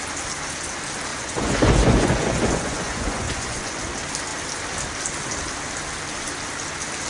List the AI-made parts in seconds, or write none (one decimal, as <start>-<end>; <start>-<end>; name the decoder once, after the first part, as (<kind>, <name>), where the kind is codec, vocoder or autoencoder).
1.1-3.8 (vocoder, Vocos)